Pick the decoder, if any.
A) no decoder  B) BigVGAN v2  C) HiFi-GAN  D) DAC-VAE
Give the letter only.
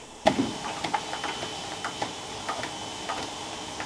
A